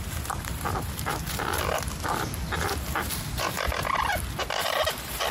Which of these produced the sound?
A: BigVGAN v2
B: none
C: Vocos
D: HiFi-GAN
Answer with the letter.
B